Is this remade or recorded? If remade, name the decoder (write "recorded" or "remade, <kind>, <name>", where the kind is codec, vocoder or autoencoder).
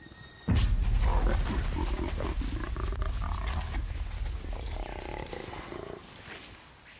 recorded